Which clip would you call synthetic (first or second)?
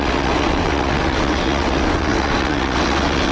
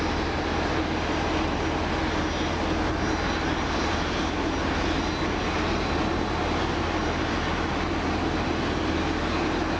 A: first